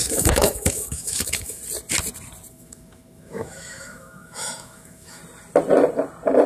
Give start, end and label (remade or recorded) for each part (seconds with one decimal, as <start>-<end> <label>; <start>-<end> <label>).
0.0-1.6 remade; 1.6-2.5 recorded; 2.5-5.2 remade; 5.2-6.5 recorded

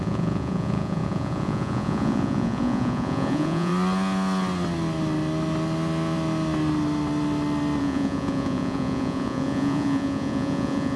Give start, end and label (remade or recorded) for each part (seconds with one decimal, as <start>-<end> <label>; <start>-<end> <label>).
0.0-3.7 remade; 3.7-7.8 recorded; 7.8-11.0 remade

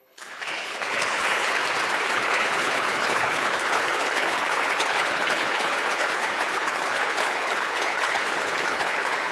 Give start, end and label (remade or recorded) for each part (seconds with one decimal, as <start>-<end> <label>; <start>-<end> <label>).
0.0-1.6 remade; 1.6-2.1 recorded; 2.1-9.3 remade